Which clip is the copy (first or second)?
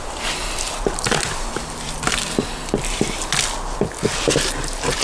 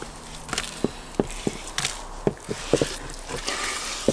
first